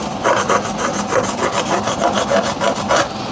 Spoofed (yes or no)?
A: no